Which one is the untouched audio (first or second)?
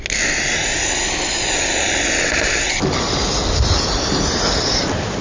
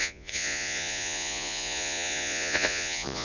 first